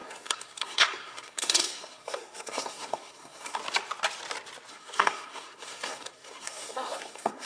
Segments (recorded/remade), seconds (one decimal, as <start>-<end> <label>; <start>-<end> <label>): 0.0-3.6 remade; 3.6-4.7 recorded; 4.7-7.5 remade